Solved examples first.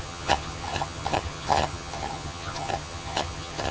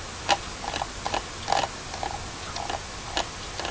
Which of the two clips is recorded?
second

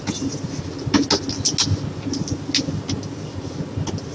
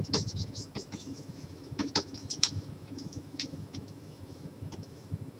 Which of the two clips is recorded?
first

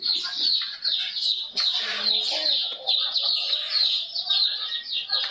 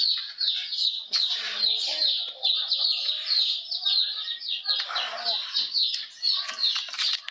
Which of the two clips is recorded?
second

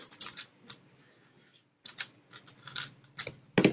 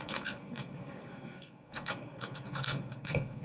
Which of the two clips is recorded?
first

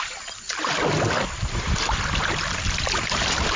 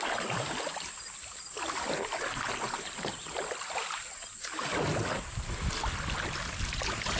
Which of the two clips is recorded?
second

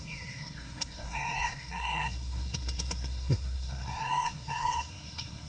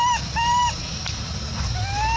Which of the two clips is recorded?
second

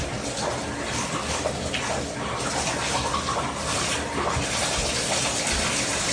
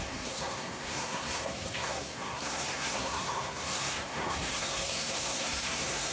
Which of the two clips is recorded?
first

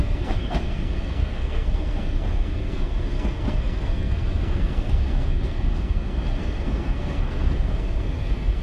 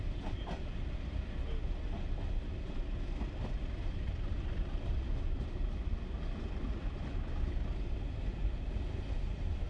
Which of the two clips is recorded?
second